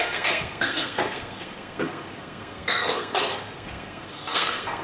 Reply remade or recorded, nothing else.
remade